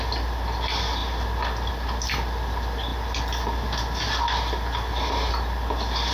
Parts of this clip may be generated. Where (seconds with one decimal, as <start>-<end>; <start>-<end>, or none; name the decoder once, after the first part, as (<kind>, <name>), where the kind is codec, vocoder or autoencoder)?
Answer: none